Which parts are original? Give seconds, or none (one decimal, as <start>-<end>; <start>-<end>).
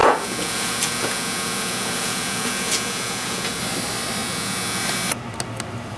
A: 3.6-4.2; 4.8-6.0